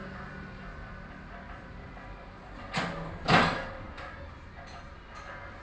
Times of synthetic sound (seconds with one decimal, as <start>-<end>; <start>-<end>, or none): none